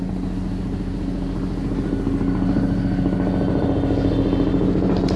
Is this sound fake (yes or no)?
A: no